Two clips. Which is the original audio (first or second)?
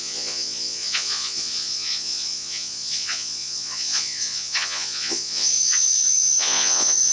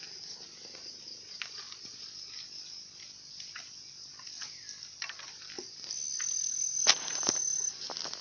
second